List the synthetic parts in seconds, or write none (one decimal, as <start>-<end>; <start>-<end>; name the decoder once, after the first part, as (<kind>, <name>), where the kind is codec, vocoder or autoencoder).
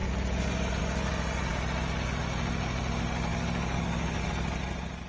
3.3-4.3 (codec, DAC)